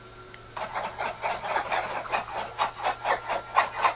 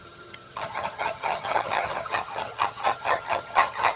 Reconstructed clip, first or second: second